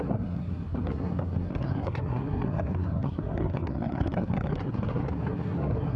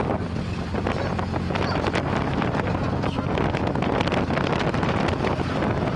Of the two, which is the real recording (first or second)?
second